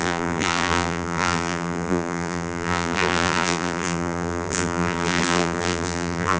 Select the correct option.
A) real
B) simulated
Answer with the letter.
B